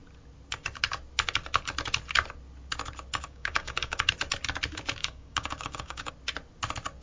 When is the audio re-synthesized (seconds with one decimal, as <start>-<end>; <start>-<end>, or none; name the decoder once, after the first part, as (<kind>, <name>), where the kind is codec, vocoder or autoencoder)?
3.1-4.1 (codec, DAC); 5.0-6.1

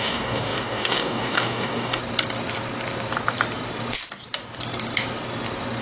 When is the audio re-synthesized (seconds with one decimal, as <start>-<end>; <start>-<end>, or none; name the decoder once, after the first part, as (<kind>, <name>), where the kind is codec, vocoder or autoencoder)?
0.0-2.0 (codec, DAC)

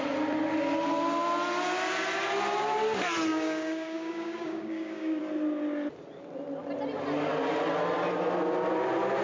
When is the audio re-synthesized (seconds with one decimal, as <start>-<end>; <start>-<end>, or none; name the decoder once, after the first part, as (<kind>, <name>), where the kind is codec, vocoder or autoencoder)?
3.3-5.2 (codec, DAC)

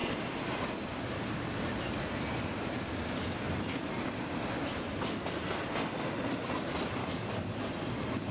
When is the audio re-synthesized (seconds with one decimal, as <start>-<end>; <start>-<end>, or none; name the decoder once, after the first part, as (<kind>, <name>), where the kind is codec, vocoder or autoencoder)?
7.0-7.7 (codec, DAC)

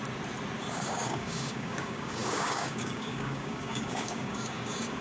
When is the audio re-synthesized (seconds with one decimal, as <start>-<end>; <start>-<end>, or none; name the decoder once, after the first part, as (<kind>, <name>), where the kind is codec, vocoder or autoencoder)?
0.7-5.0 (codec, DAC)

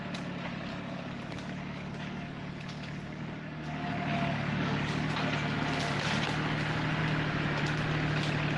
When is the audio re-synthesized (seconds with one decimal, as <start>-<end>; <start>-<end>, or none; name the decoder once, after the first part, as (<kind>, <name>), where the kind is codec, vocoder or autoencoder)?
0.7-5.1 (codec, DAC)

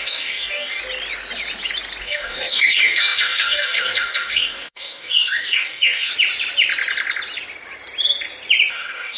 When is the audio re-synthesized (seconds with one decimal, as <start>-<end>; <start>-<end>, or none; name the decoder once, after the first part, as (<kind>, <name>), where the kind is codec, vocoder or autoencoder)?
0.0-0.8 (codec, DAC); 2.0-6.1; 8.7-9.2